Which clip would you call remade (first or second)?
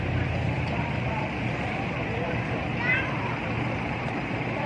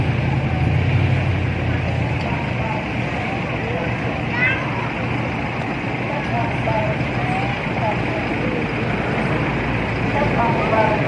first